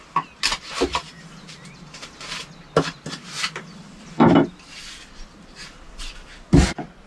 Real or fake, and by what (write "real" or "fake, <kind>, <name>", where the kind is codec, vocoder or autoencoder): real